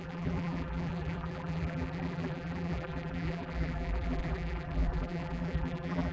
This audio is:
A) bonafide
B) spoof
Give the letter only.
B